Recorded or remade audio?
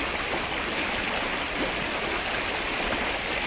recorded